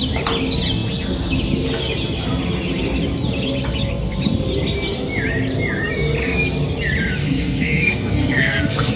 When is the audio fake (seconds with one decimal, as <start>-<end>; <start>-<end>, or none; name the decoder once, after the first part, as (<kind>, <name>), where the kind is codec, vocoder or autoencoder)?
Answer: 7.2-9.0 (codec, SNAC)